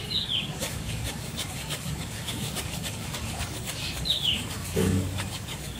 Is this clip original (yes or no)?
no